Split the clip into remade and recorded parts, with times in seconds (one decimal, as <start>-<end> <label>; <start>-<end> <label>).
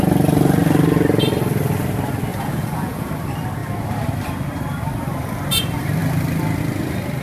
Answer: 0.0-2.3 recorded; 2.3-3.1 remade; 3.1-7.2 recorded